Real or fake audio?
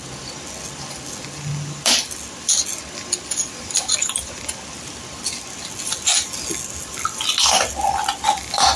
real